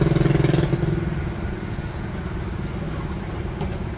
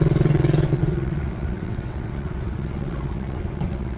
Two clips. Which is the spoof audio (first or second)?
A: second